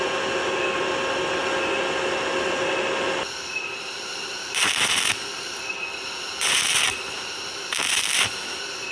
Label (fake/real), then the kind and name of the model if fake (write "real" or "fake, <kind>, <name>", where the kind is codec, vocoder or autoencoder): real